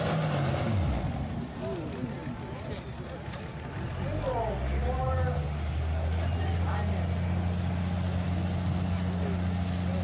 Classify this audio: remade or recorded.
recorded